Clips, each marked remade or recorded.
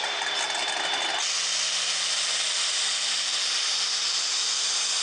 recorded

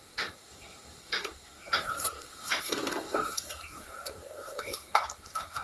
remade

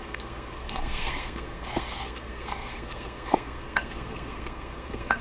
remade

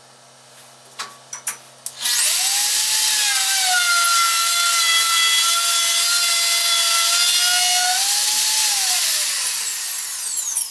recorded